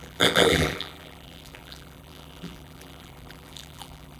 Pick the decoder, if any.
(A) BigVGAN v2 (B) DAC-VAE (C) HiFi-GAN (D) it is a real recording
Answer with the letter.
A